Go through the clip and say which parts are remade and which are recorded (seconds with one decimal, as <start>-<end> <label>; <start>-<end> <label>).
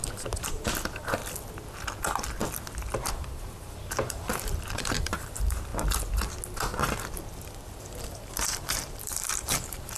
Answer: 0.0-0.5 recorded; 0.5-1.2 remade; 1.2-3.1 recorded; 3.1-5.7 remade; 5.7-7.8 recorded; 7.8-10.0 remade